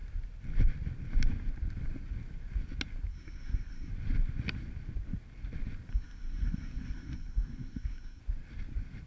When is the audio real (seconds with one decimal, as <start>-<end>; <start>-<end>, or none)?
0.0-3.1; 3.9-5.9; 8.2-9.1